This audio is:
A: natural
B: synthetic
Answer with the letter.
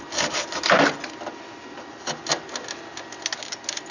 A